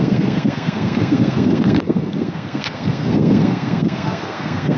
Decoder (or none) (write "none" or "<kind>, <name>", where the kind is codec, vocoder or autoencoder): codec, SNAC